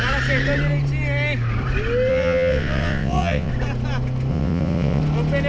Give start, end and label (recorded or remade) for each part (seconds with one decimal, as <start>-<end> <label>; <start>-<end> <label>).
0.0-2.1 recorded; 2.1-3.5 remade; 3.5-4.3 recorded; 4.3-5.0 remade; 5.0-5.5 recorded